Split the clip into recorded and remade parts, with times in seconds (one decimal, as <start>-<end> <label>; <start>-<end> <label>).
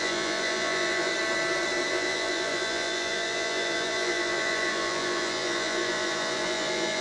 0.0-1.1 remade; 1.1-1.9 recorded; 1.9-7.0 remade